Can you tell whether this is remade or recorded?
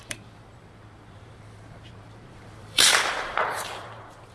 remade